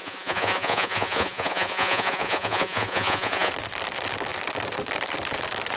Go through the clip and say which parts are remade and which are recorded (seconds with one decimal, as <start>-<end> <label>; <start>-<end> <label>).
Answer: 0.0-3.5 remade; 3.5-5.8 recorded